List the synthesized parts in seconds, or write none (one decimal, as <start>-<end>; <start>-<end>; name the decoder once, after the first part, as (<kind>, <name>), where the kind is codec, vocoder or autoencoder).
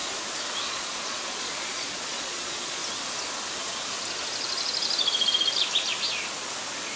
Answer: 0.7-2.8 (vocoder, Vocos)